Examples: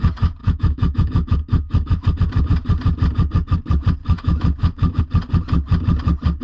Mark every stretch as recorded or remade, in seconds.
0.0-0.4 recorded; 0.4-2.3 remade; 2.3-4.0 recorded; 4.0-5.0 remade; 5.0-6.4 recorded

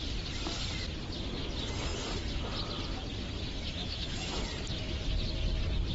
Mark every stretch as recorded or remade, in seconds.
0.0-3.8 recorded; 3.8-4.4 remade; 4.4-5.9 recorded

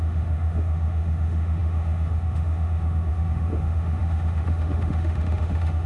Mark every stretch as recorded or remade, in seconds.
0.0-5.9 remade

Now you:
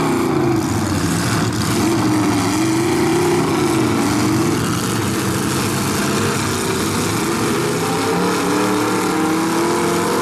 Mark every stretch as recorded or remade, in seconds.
0.0-10.2 recorded

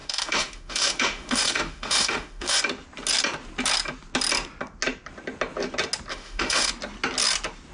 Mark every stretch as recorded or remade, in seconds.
0.0-2.6 remade; 2.6-6.1 recorded; 6.1-6.7 remade; 6.7-7.7 recorded

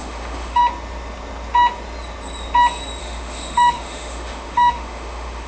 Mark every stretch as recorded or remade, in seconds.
0.0-0.6 remade; 0.6-3.0 recorded; 3.0-5.5 remade

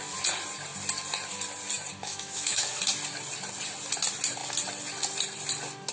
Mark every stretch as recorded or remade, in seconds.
0.0-2.0 recorded; 2.0-2.8 remade; 2.8-5.9 recorded